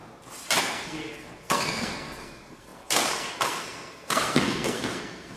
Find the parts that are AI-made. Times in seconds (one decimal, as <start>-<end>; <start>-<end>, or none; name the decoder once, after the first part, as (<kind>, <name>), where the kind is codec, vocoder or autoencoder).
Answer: 0.6-5.4 (codec, SNAC)